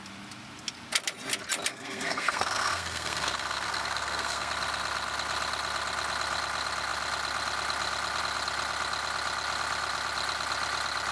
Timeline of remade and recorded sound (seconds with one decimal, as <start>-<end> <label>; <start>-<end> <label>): 0.0-1.7 recorded; 1.7-4.5 remade; 4.5-11.1 recorded